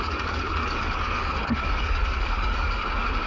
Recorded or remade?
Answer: remade